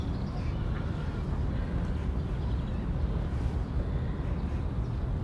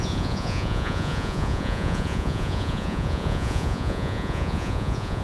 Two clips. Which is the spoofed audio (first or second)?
second